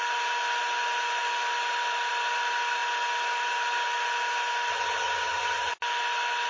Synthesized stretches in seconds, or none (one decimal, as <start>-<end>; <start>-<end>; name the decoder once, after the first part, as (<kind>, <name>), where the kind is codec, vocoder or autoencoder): 4.7-5.7 (vocoder, HiFi-GAN)